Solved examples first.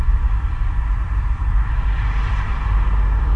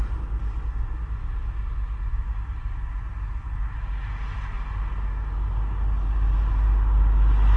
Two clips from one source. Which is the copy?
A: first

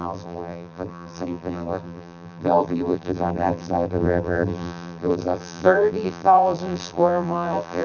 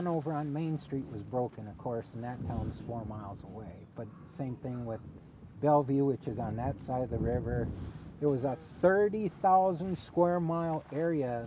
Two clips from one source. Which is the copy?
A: first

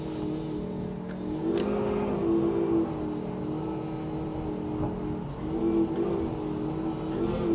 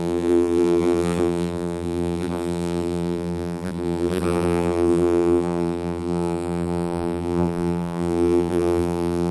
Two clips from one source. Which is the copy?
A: second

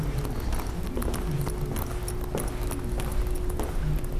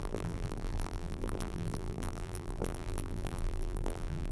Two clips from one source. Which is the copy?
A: second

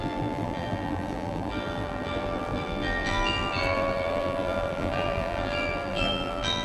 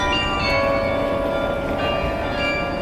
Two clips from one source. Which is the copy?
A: first